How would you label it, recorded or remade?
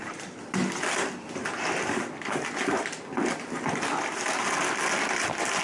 recorded